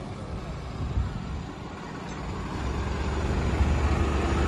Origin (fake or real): real